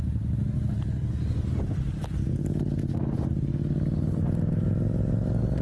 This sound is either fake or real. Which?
real